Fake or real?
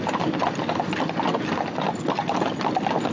real